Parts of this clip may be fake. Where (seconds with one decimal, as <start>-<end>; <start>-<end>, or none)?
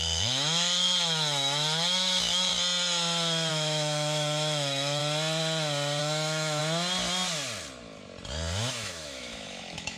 0.0-2.5; 3.5-5.0; 6.0-6.6; 8.7-10.0